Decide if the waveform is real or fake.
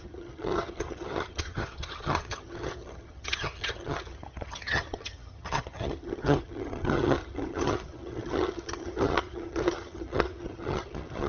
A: fake